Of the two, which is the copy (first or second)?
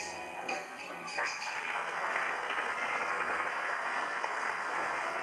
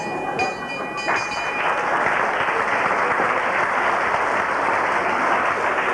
first